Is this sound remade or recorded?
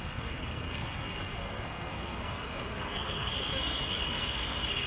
remade